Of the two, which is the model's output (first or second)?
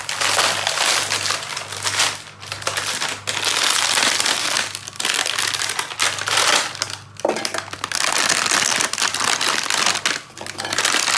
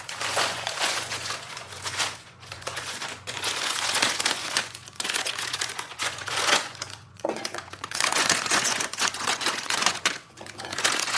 second